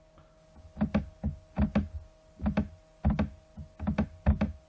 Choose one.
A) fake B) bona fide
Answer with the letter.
B